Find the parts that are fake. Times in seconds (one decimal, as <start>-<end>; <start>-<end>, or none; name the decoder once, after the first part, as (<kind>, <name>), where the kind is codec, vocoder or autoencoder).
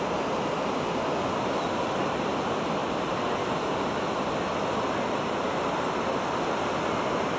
none